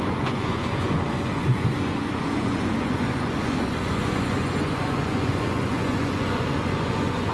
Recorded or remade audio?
remade